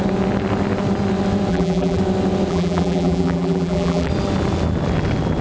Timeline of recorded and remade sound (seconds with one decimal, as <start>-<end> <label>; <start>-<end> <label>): 0.0-1.5 recorded; 1.5-2.0 remade; 2.0-2.5 recorded; 2.5-4.1 remade; 4.1-5.4 recorded